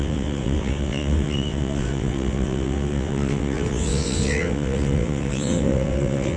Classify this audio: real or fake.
fake